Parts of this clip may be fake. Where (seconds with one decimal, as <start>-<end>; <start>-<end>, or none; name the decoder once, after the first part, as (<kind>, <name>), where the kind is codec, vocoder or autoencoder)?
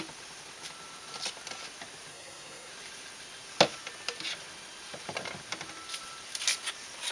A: 2.1-2.7 (codec, SNAC)